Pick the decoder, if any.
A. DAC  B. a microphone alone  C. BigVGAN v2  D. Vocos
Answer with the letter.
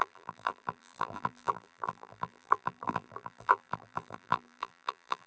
C